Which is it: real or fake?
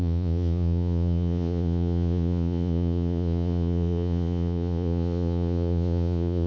fake